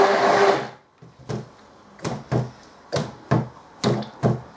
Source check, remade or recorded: recorded